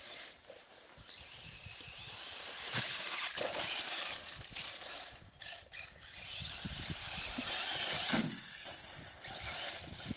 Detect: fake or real fake